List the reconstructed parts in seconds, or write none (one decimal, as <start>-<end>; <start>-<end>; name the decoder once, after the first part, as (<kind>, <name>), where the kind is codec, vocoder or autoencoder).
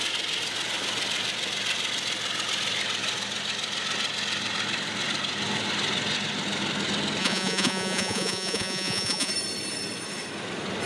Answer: 7.2-9.3 (vocoder, Vocos)